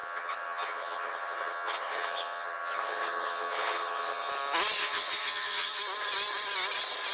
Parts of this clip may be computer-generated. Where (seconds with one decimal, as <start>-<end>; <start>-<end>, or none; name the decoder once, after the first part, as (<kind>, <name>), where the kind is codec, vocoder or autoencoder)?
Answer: 0.0-4.3 (vocoder, HiFi-GAN); 4.8-5.8